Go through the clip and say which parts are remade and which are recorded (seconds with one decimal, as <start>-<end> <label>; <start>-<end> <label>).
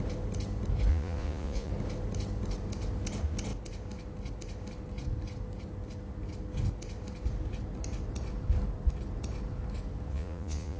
0.0-0.9 recorded; 0.9-1.7 remade; 1.7-10.1 recorded; 10.1-10.8 remade